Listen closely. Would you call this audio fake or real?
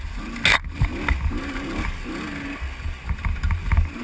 real